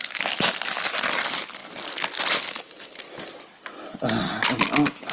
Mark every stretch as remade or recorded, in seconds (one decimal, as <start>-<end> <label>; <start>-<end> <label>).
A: 0.0-5.1 recorded